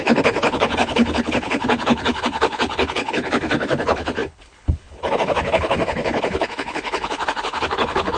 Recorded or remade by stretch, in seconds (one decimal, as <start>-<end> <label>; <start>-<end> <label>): 0.0-8.2 remade